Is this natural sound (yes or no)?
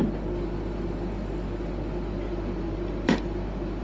no